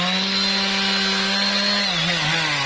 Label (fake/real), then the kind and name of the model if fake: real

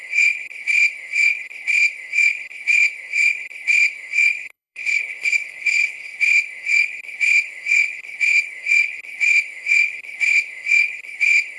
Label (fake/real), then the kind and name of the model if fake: fake, codec, HILCodec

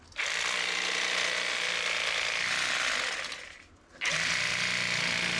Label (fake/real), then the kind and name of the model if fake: real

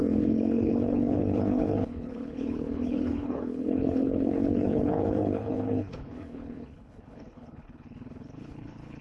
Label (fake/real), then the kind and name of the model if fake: fake, codec, HILCodec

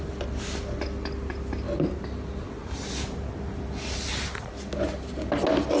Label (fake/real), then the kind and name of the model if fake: real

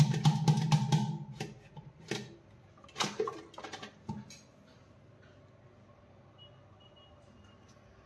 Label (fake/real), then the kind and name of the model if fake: real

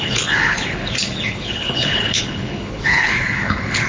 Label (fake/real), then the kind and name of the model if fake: fake, codec, HILCodec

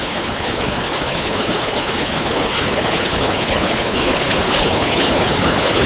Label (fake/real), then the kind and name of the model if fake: fake, codec, HILCodec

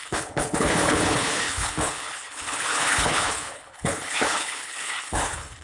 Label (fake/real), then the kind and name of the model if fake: fake, codec, HILCodec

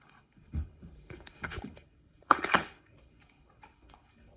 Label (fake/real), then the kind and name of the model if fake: fake, codec, HILCodec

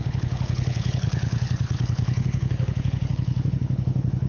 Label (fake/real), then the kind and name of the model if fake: fake, codec, HILCodec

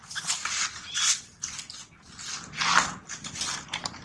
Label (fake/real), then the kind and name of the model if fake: real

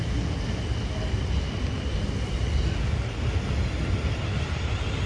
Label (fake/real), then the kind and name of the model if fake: real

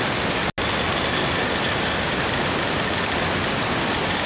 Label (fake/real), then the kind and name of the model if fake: real